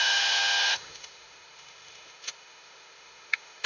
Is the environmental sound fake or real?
fake